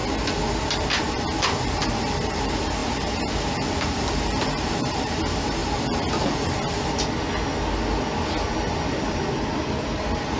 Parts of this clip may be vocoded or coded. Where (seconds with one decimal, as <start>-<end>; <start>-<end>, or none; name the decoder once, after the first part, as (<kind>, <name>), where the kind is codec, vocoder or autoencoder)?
1.6-5.6 (vocoder, BigVGAN v2); 10.0-10.4